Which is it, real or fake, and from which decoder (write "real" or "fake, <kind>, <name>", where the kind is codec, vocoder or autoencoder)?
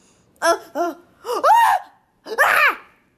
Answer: fake, vocoder, BigVGAN v2